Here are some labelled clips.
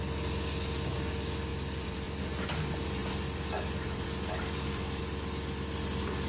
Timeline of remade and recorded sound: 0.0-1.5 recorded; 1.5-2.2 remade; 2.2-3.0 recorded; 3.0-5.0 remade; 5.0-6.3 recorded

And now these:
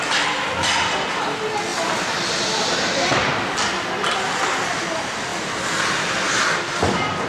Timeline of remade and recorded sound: 0.0-7.3 recorded

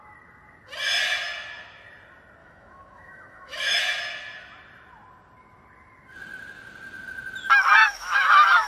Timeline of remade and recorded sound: 0.0-2.4 recorded; 2.4-3.8 remade; 3.8-7.8 recorded; 7.8-8.7 remade

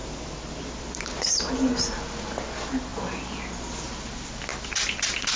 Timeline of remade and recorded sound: 0.0-1.5 remade; 1.5-2.9 recorded; 2.9-3.4 remade; 3.4-4.5 recorded; 4.5-5.4 remade

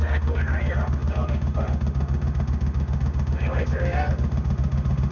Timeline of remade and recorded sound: 0.0-5.1 remade

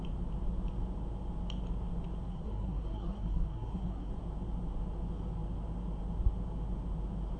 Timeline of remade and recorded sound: 0.0-2.3 recorded; 2.3-4.1 remade; 4.1-7.4 recorded

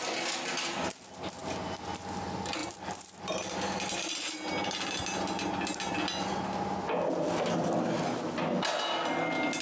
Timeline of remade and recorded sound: 0.0-2.6 recorded; 2.6-4.2 remade; 4.2-9.6 recorded

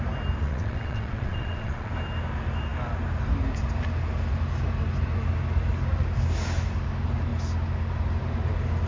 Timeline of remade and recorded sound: 0.0-0.4 recorded; 0.4-1.9 remade; 1.9-8.9 recorded